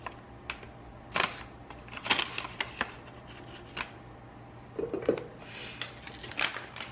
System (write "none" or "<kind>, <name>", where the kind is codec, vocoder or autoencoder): none